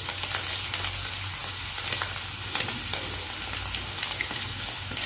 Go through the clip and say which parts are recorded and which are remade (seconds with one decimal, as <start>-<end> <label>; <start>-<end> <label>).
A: 0.0-5.1 recorded